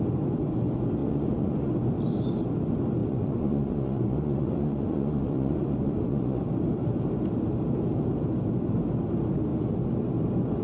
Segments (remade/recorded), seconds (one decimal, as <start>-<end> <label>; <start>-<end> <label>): 0.0-1.0 recorded; 1.0-1.7 remade; 1.7-3.0 recorded; 3.0-6.4 remade; 6.4-10.6 recorded